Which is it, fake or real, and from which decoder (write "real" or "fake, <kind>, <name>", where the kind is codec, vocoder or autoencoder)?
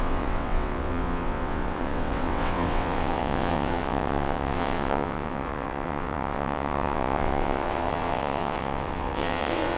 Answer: fake, vocoder, WaveNeXt